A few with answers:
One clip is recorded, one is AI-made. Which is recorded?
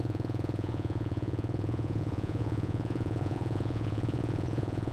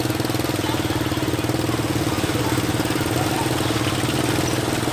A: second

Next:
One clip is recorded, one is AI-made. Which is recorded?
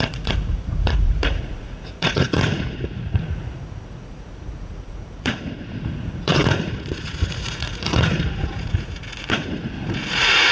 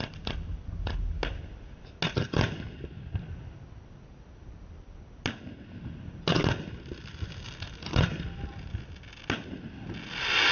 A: second